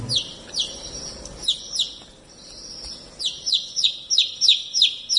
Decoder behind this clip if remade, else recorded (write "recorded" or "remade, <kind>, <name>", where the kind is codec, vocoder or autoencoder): recorded